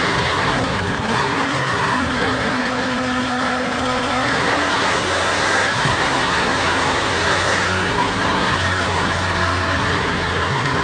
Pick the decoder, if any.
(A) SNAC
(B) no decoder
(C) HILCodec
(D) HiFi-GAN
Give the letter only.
A